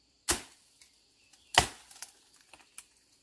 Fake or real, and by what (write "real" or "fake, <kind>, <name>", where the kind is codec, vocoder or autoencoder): real